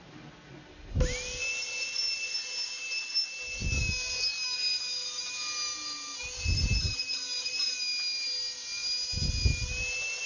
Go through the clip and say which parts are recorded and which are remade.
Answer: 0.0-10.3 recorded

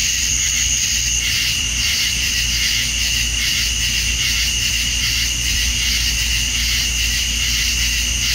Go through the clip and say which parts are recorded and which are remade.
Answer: 0.0-2.3 remade; 2.3-8.3 recorded

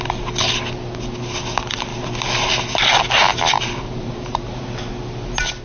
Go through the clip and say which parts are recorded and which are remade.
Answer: 0.0-3.5 recorded; 3.5-4.6 remade; 4.6-5.6 recorded

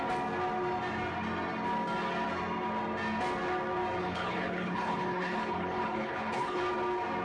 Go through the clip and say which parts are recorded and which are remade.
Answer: 0.0-4.0 recorded; 4.0-6.6 remade; 6.6-7.2 recorded

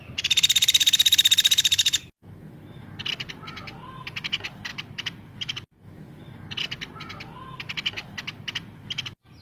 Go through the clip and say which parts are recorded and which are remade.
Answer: 0.0-9.4 recorded

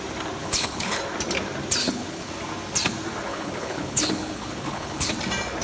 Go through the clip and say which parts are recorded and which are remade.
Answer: 0.0-0.4 recorded; 0.4-1.0 remade; 1.0-1.8 recorded; 1.8-2.3 remade; 2.3-3.3 recorded; 3.3-5.1 remade; 5.1-5.6 recorded